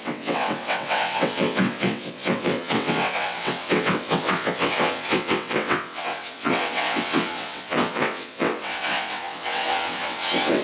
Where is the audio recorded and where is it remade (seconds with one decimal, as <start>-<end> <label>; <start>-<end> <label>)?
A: 0.0-10.6 remade